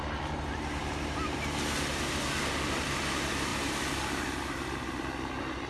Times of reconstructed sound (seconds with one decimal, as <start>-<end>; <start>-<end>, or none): none